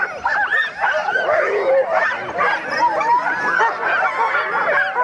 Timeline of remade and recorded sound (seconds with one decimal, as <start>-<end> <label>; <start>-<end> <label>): 0.0-5.0 recorded